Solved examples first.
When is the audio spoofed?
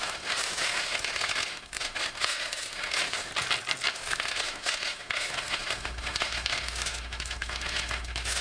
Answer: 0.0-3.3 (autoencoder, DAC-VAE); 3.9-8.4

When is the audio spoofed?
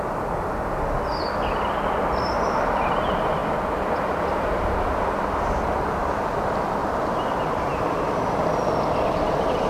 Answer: none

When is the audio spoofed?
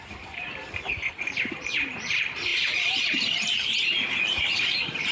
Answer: 0.0-5.1 (vocoder, BigVGAN v2)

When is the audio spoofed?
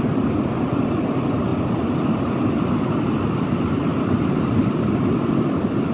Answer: none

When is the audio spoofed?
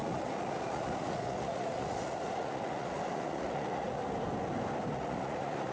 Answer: 0.0-4.0 (vocoder, Vocos); 4.9-5.7